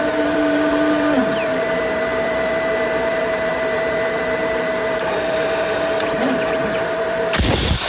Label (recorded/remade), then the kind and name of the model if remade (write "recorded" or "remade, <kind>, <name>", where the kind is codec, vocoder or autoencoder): remade, vocoder, BigVGAN v2